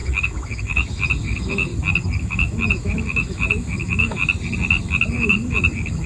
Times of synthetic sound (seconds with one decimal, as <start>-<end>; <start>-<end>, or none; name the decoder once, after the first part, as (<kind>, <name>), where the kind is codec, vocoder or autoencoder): 0.0-1.7 (autoencoder, DAC-VAE); 2.2-4.2; 4.8-6.1